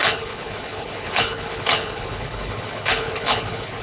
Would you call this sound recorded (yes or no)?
no